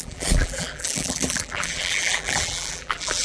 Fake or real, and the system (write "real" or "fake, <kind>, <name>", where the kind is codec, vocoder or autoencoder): fake, vocoder, BigVGAN v2